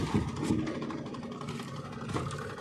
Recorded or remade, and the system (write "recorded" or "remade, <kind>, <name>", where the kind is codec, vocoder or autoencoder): recorded